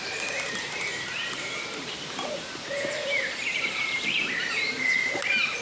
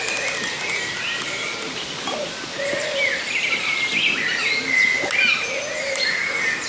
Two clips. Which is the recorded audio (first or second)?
second